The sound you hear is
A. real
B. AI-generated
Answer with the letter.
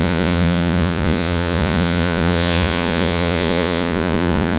B